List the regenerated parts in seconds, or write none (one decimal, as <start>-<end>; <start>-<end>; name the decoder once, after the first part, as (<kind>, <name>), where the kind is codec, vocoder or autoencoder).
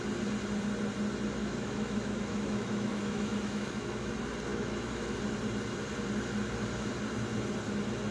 1.4-4.1 (autoencoder, DAC-VAE); 4.5-5.2